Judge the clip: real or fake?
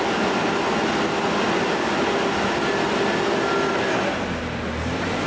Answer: real